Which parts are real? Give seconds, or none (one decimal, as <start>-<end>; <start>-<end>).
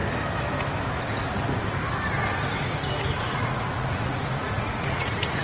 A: 0.0-3.2